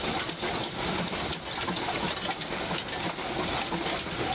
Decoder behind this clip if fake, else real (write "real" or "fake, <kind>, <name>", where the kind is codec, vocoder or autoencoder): real